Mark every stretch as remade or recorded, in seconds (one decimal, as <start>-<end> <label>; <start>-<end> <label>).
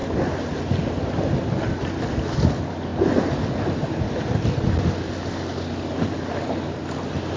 0.0-7.4 recorded